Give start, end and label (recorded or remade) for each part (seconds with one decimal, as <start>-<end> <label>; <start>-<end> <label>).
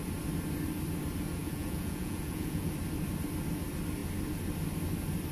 0.0-1.4 recorded; 1.4-2.7 remade; 2.7-5.3 recorded